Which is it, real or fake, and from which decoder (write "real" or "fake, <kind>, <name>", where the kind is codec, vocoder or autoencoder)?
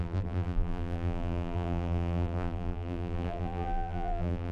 fake, vocoder, BigVGAN v2